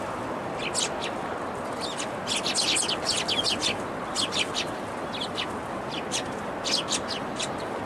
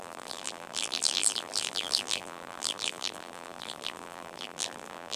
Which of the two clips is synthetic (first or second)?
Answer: second